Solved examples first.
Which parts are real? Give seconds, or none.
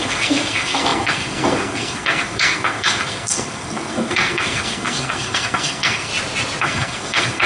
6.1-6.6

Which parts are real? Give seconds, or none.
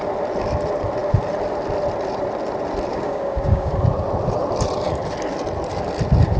0.0-2.9; 3.7-6.4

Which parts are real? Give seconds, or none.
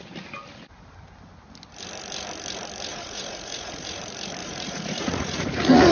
0.0-2.9; 4.0-4.4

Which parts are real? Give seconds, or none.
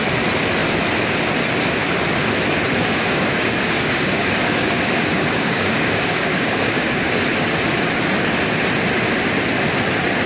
0.0-2.8; 7.2-10.3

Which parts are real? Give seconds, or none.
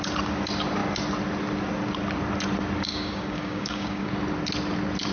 0.0-2.9; 4.1-5.1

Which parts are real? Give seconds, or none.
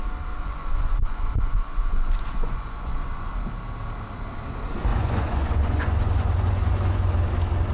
0.0-0.4; 3.3-4.9; 7.1-7.7